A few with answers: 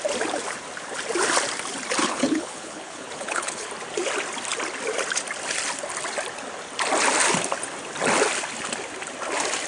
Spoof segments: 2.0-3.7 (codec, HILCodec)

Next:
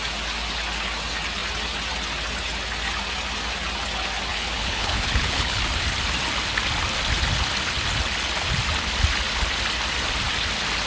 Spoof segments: 4.3-5.6 (codec, HILCodec)